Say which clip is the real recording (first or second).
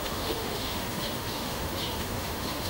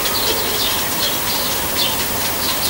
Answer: second